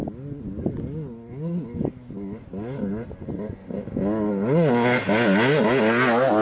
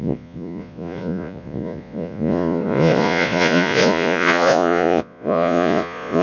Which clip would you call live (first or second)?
first